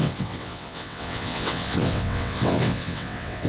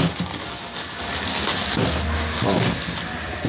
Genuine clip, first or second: second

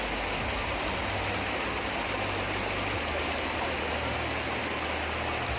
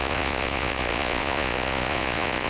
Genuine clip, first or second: first